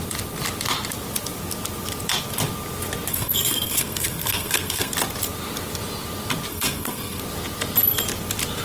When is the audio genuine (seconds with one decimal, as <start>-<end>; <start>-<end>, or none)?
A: 0.0-3.1; 4.9-6.5; 7.2-8.6